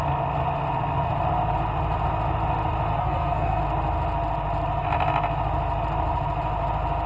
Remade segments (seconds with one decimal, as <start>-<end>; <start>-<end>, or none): 2.9-3.6